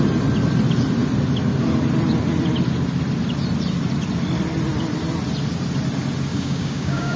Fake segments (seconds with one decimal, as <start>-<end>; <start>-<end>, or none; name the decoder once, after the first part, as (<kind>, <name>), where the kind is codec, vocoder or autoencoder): 6.3-7.2 (codec, DAC)